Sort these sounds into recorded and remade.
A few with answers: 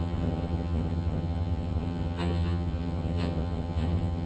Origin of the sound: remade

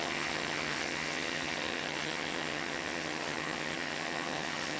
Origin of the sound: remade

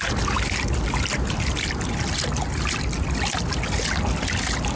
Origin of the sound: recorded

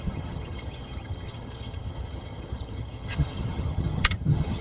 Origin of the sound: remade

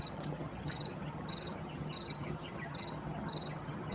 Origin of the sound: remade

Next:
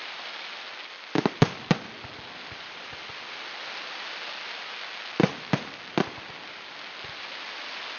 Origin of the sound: recorded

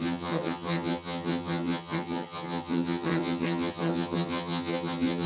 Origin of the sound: remade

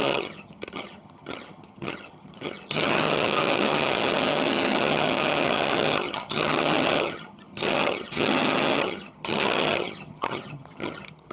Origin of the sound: remade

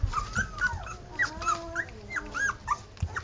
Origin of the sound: recorded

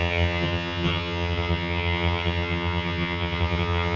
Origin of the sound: remade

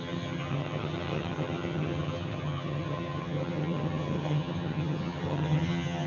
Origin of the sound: remade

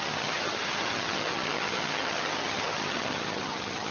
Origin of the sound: remade